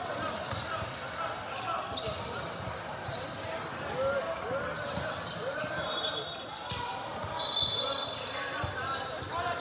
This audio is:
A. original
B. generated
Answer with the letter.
A